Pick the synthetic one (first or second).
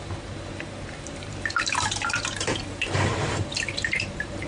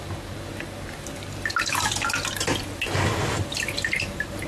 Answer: first